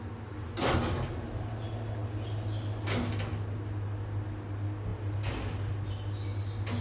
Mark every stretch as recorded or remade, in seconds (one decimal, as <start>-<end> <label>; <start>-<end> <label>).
0.0-6.8 recorded

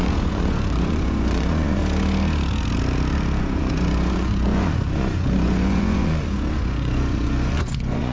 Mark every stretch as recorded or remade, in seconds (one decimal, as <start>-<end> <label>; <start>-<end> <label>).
0.0-1.8 remade; 1.8-3.4 recorded; 3.4-8.1 remade

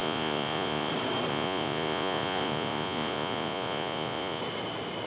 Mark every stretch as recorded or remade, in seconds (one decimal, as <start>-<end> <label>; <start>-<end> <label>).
0.0-0.9 remade; 0.9-1.3 recorded; 1.3-4.4 remade; 4.4-5.1 recorded

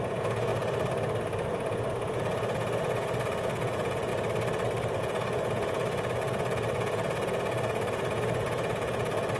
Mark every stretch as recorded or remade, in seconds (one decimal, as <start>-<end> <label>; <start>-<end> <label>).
0.0-0.5 remade; 0.5-1.5 recorded; 1.5-4.1 remade; 4.1-5.0 recorded; 5.0-9.4 remade

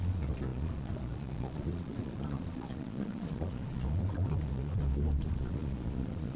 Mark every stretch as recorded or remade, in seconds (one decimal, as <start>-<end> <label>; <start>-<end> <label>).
0.0-6.4 remade

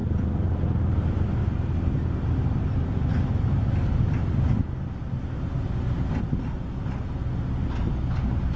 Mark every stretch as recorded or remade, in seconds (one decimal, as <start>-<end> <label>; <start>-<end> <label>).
0.0-8.6 recorded